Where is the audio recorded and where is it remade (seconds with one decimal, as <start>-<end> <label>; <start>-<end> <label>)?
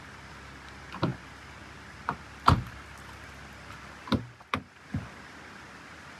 0.0-6.2 recorded